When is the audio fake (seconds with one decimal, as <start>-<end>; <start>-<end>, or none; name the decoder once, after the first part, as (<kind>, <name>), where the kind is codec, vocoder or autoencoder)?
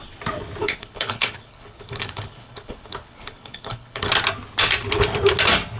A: 0.6-4.1 (codec, HILCodec)